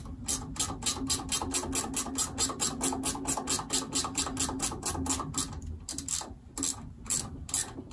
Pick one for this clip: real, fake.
real